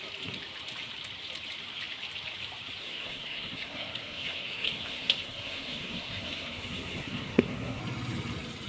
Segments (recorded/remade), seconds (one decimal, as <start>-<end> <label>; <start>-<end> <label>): 0.0-2.8 recorded; 2.8-7.8 remade; 7.8-8.7 recorded